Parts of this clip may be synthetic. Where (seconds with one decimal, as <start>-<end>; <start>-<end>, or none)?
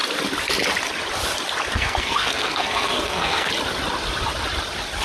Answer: 1.7-3.5